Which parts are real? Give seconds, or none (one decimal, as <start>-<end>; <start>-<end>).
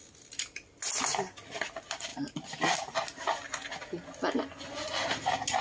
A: 0.0-5.6